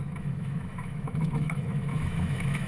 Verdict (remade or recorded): remade